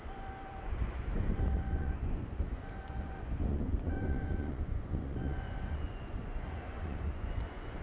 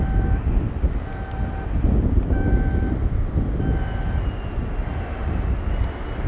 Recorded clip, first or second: second